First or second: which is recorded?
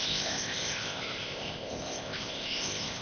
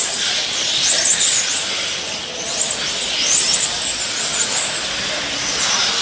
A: second